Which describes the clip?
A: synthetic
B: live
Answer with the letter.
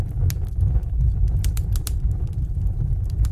B